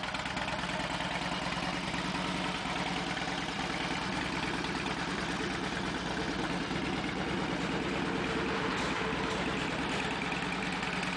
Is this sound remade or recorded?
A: recorded